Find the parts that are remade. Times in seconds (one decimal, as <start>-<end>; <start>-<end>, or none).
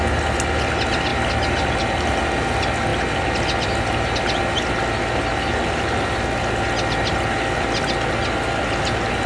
none